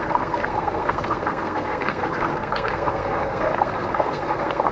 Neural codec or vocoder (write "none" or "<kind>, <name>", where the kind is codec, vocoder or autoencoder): codec, SNAC